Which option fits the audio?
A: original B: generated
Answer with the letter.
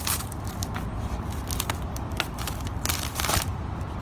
B